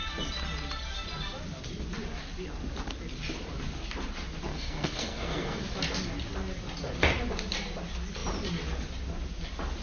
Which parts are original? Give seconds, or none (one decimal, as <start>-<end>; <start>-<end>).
0.0-4.5; 5.6-9.8